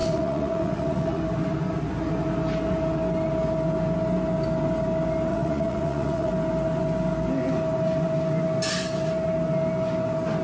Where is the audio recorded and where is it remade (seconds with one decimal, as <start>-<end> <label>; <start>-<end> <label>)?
0.0-1.2 remade; 1.2-5.3 recorded; 5.3-6.3 remade; 6.3-10.4 recorded